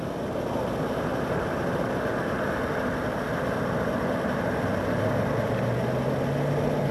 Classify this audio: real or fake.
real